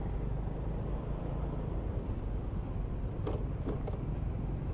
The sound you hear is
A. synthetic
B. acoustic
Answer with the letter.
B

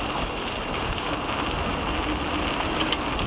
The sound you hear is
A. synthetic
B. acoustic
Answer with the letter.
B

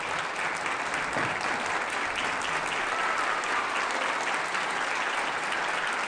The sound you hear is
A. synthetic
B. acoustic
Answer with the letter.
B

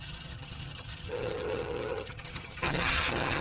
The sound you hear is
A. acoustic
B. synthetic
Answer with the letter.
B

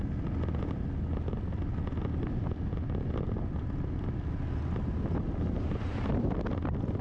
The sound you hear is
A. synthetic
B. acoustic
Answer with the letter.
B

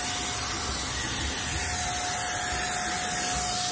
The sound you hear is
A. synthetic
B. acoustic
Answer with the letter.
B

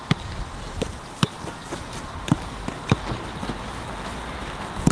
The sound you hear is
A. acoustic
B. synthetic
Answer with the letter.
A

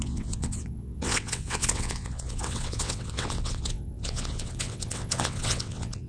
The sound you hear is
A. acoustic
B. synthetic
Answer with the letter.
B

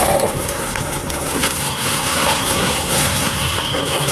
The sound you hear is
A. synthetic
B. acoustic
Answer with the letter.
A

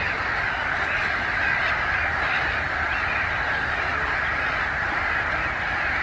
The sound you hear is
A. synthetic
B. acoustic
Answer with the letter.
B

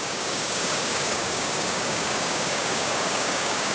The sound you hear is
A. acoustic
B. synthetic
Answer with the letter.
B